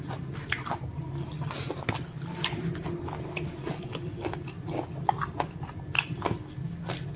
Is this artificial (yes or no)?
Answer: no